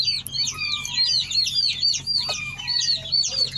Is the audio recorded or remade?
recorded